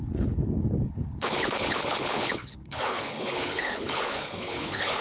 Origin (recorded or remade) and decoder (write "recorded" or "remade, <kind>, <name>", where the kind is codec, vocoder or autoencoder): remade, codec, HILCodec